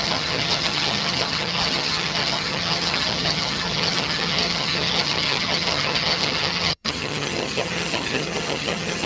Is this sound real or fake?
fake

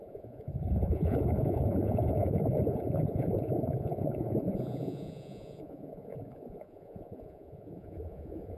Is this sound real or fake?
fake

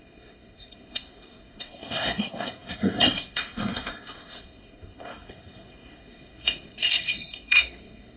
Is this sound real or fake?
fake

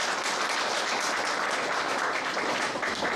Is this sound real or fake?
real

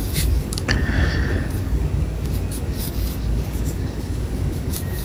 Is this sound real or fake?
fake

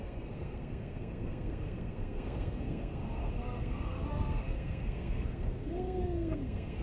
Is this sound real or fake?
fake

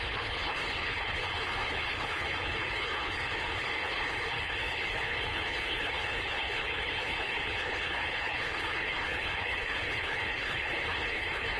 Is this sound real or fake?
fake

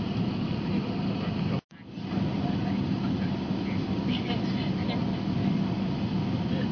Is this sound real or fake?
real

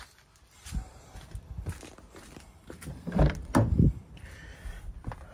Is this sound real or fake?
real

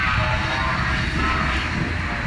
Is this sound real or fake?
real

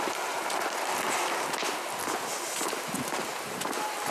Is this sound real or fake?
real